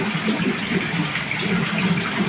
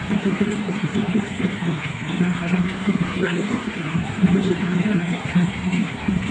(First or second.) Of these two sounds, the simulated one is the second